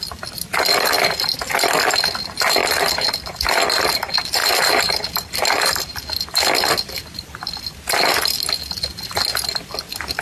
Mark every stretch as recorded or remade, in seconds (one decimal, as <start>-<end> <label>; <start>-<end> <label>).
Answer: 0.0-2.6 recorded; 2.6-3.8 remade; 3.8-4.4 recorded; 4.4-5.6 remade; 5.6-7.0 recorded; 7.0-7.6 remade; 7.6-10.2 recorded